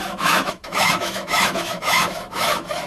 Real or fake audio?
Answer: fake